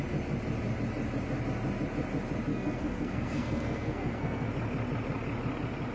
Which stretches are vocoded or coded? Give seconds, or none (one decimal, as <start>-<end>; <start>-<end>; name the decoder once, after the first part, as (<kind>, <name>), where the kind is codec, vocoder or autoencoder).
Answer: 2.5-4.5 (codec, SNAC)